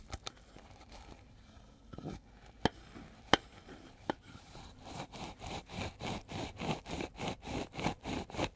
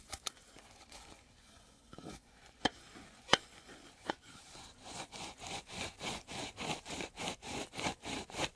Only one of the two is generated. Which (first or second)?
second